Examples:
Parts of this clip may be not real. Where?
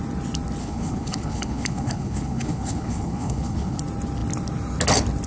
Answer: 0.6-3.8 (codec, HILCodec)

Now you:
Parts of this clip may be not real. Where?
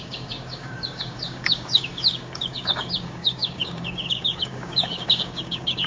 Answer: 0.0-5.9 (codec, DAC)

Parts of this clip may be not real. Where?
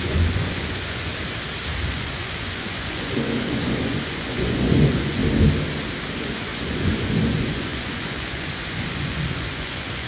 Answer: 0.0-1.1 (vocoder, Vocos); 1.8-5.2; 6.2-10.1